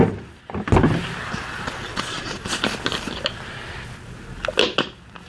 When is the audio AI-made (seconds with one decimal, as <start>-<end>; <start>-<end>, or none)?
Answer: 1.9-2.6